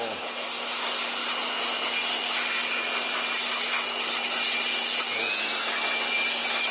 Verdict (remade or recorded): recorded